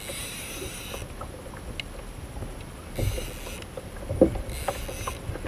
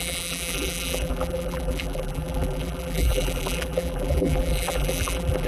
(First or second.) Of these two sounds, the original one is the first